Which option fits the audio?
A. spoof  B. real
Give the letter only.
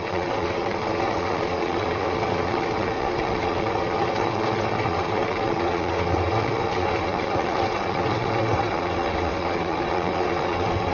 A